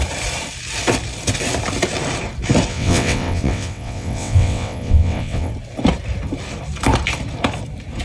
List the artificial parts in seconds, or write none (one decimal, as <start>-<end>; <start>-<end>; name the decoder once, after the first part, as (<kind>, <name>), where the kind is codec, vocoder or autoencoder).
2.7-5.5 (vocoder, WaveNeXt)